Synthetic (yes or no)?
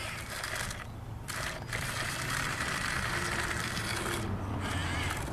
yes